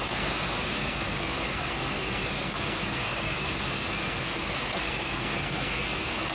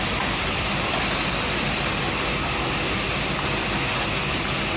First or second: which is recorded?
second